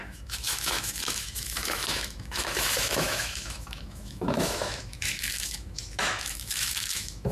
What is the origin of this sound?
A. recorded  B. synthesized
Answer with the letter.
B